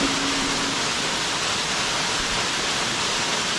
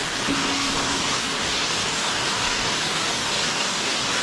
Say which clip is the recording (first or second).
first